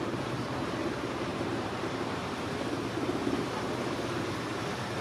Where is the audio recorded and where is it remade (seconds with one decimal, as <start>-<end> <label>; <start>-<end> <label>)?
0.0-5.0 remade